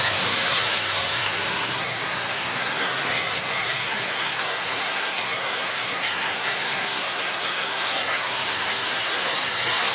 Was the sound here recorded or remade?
remade